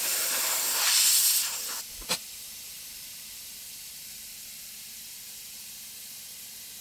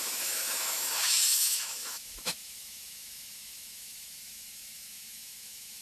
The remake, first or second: second